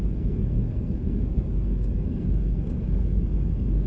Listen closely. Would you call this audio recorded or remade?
remade